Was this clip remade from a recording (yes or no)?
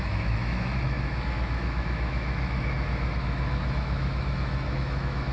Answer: yes